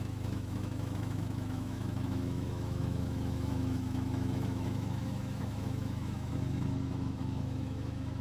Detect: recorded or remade remade